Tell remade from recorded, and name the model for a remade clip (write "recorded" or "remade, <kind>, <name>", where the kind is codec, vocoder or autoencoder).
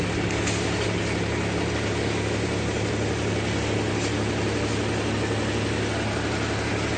recorded